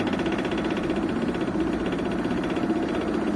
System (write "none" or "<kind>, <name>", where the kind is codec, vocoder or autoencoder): none